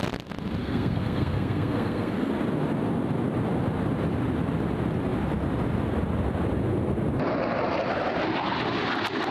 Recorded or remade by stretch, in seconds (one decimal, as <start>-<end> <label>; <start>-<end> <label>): 0.0-0.6 recorded; 0.6-2.3 remade; 2.3-9.3 recorded

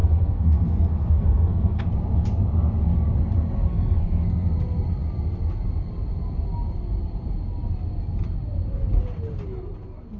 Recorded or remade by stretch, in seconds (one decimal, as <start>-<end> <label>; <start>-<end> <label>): 0.0-1.8 remade; 1.8-3.7 recorded; 3.7-4.5 remade; 4.5-10.2 recorded

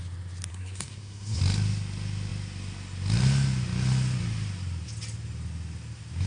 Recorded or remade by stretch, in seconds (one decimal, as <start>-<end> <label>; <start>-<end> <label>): 0.0-0.5 recorded; 0.5-1.4 remade; 1.4-6.3 recorded

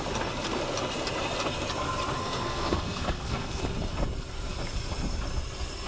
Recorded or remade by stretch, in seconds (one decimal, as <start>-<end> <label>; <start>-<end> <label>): 0.0-2.2 recorded; 2.2-3.6 remade; 3.6-5.9 recorded

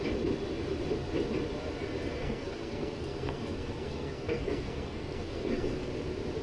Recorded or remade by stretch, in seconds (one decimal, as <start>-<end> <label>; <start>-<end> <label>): 0.0-2.1 recorded; 2.1-5.9 remade; 5.9-6.4 recorded